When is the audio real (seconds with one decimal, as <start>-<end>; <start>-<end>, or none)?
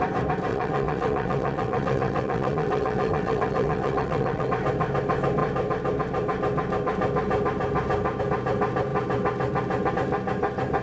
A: 0.0-0.5; 4.5-10.8